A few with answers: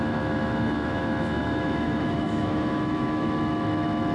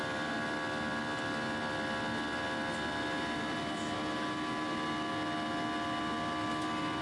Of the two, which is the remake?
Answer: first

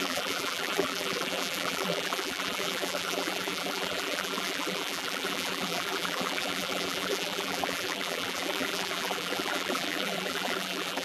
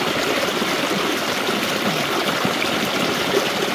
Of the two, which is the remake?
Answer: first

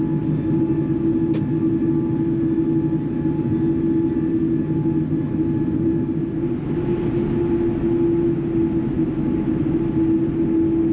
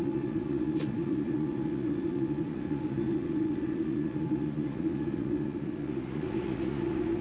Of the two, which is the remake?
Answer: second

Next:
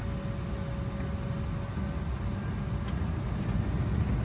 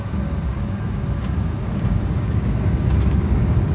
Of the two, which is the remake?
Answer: second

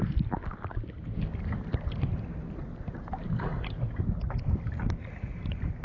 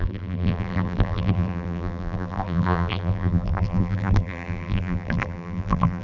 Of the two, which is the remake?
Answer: second